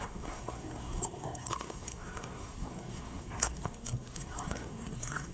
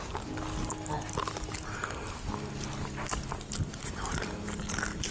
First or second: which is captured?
second